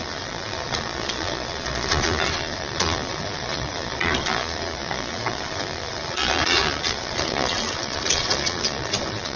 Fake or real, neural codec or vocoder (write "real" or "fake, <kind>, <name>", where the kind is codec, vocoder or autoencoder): fake, vocoder, Vocos